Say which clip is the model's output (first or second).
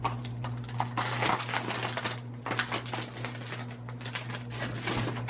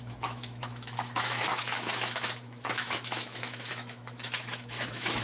second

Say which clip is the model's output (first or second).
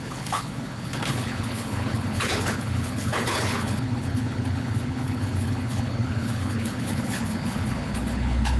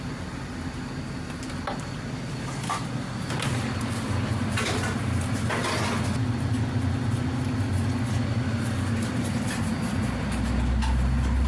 first